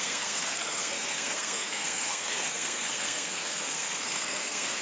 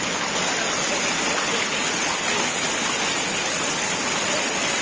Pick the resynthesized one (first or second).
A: first